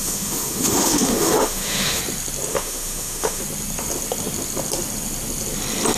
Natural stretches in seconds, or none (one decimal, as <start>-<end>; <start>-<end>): 2.0-2.5; 3.4-6.0